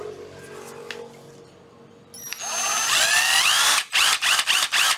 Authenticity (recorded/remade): recorded